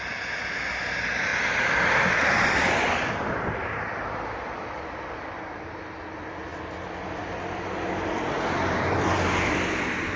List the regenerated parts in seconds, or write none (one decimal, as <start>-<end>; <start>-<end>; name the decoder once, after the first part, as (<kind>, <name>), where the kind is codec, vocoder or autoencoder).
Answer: none